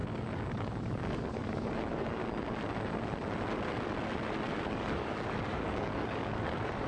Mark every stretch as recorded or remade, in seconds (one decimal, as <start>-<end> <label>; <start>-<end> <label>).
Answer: 0.0-2.2 remade; 2.2-4.7 recorded; 4.7-6.9 remade